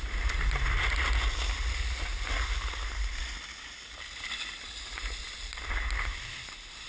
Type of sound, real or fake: real